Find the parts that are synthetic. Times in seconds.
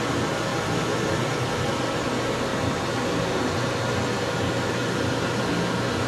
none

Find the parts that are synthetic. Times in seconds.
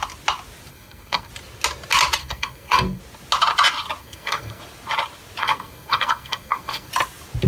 0.7-1.3 (codec, SNAC); 2.2-3.0; 4.0-4.6; 5.4-6.9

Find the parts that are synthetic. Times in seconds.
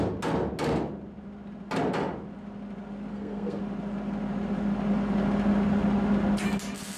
3.1-3.6 (codec, SNAC)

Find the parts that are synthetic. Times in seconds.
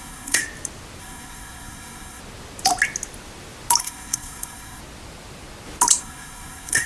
0.0-0.4 (codec, SNAC); 1.0-2.2; 3.8-4.8; 6.0-6.9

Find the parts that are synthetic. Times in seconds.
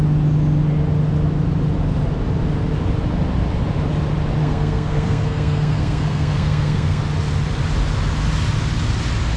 4.4-7.0 (codec, SNAC)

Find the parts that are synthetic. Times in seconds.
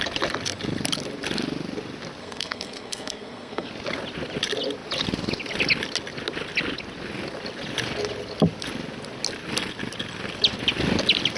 2.2-3.7 (codec, SNAC)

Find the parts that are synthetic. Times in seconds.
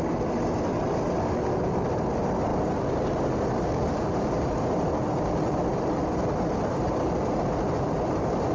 none